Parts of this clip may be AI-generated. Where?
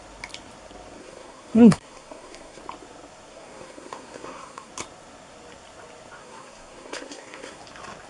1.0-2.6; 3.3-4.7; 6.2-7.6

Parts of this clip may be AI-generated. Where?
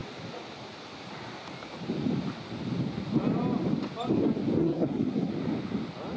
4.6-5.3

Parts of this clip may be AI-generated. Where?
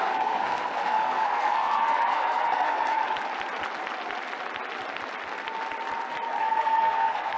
0.0-3.0; 6.4-7.4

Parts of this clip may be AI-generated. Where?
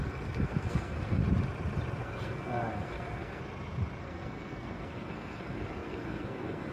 0.0-1.2; 2.0-3.4; 4.0-6.7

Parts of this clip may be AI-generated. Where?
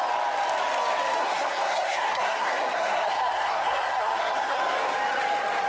1.2-4.6